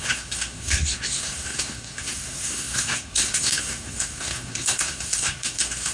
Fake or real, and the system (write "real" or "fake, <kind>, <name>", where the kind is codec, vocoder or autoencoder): fake, codec, SNAC